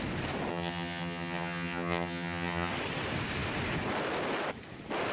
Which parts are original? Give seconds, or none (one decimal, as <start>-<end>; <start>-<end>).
0.0-0.5; 2.7-5.1